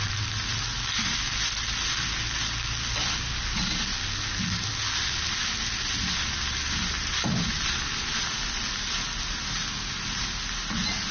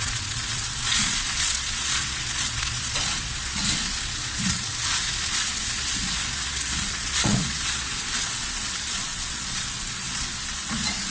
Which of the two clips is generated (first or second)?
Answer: second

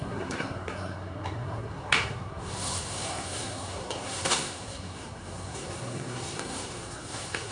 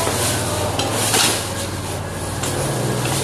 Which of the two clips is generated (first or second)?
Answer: first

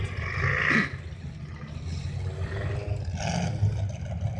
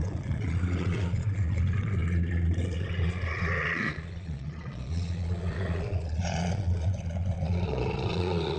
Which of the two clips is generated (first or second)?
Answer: second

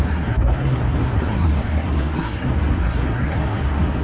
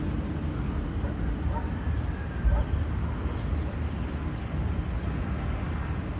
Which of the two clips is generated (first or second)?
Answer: first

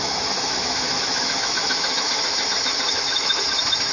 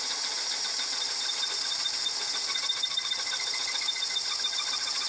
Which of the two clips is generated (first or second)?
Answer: first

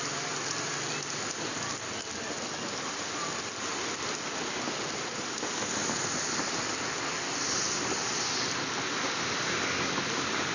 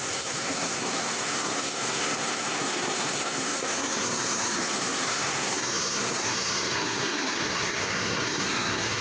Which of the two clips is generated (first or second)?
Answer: second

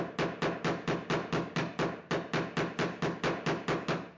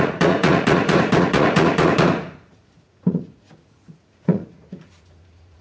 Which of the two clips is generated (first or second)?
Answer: second